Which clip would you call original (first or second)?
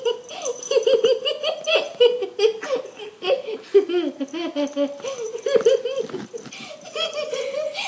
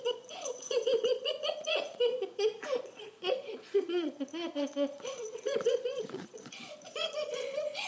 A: first